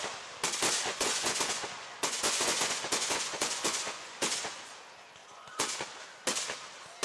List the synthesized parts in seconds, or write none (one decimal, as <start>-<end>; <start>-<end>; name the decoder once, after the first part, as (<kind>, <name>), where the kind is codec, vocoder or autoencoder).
0.9-4.7 (vocoder, Vocos); 5.2-5.7